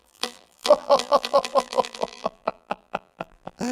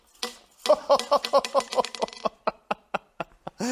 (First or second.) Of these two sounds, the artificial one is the first